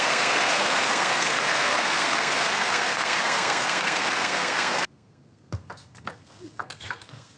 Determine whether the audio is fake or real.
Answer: fake